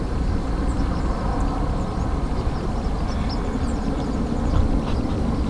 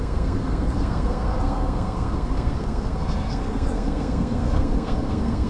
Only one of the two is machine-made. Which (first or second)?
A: second